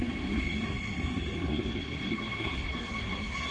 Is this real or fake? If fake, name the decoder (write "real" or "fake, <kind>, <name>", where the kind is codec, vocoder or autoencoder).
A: fake, codec, SNAC